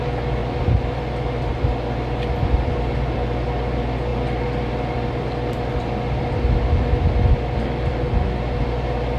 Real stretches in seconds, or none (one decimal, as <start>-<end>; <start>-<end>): 0.0-9.2